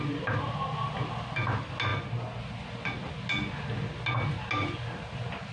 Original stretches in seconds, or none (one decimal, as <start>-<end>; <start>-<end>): 0.0-5.5